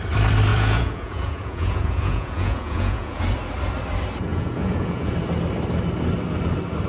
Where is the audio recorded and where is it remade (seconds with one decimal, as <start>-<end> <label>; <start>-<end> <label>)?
0.0-0.5 recorded; 0.5-3.2 remade; 3.2-4.3 recorded; 4.3-5.1 remade; 5.1-6.9 recorded